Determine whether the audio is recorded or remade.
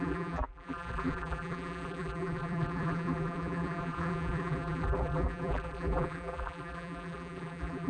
remade